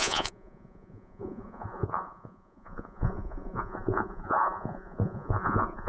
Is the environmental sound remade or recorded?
remade